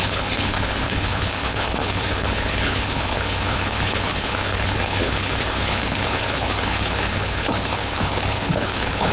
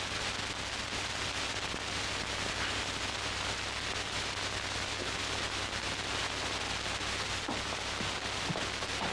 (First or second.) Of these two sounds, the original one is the second